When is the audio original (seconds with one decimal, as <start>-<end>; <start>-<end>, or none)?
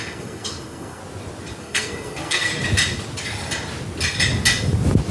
1.0-1.6; 2.5-5.1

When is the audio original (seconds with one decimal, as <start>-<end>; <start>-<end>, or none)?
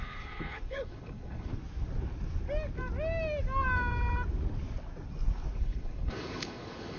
1.5-5.6